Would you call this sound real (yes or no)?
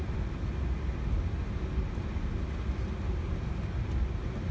yes